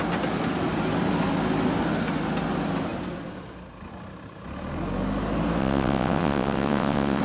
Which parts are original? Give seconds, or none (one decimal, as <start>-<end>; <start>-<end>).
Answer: 0.0-5.6